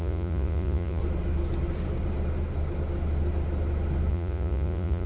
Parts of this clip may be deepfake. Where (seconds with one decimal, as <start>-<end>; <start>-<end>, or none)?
0.0-1.0; 4.1-5.1